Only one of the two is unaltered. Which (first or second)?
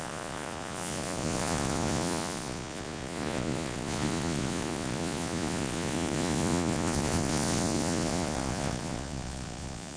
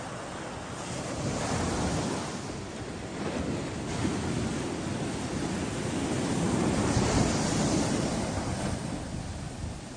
second